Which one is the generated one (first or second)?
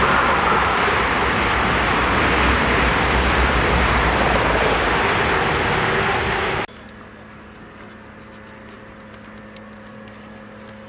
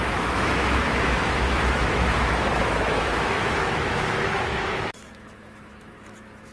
second